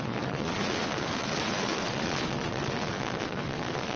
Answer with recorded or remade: remade